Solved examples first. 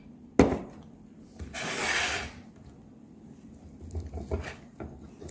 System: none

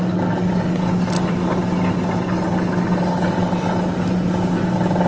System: none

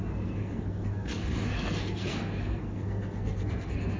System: codec, SNAC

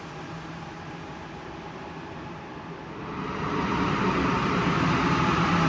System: none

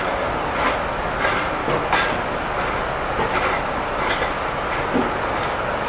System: none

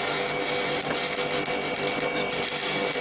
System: none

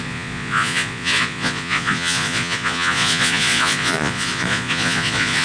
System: vocoder, Vocos